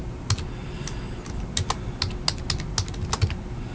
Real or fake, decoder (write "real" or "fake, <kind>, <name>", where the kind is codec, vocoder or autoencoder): real